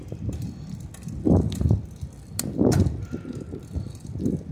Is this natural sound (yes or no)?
yes